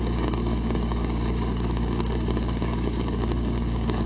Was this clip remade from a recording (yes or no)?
yes